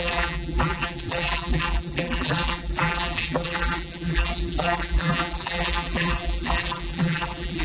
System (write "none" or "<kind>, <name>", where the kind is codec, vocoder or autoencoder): vocoder, BigVGAN v2